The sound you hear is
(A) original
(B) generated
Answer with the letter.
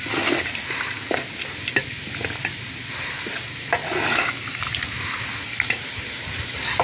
A